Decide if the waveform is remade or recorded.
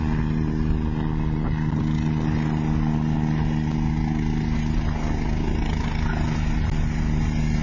recorded